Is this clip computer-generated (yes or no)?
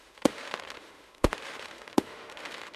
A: yes